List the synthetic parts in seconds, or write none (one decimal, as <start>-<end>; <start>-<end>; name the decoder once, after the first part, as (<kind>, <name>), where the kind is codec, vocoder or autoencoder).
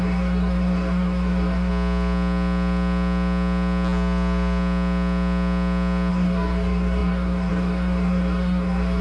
0.0-1.7 (codec, DAC); 6.1-9.0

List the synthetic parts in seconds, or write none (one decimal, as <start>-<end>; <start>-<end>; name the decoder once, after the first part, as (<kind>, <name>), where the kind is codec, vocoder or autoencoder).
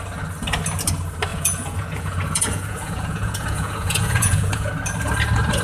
1.3-4.7 (vocoder, Vocos)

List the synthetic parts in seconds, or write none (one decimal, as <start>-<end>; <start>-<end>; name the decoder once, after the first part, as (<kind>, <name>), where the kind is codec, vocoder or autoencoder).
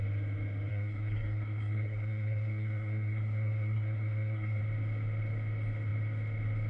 0.7-4.6 (codec, SNAC)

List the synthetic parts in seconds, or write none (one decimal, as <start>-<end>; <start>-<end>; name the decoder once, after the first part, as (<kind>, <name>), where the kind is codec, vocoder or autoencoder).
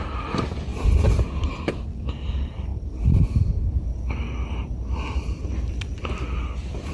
none